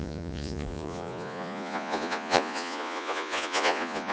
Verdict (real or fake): fake